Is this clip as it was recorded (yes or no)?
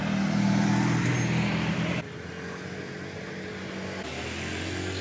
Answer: yes